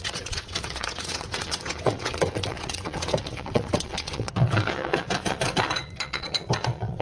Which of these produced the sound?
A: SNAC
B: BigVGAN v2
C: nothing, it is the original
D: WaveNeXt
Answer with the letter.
D